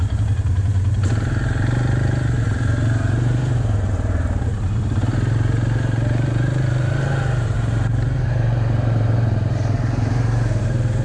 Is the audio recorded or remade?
remade